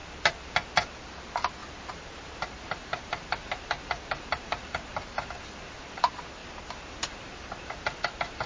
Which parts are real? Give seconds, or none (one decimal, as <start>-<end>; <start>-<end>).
0.0-1.1; 6.4-6.9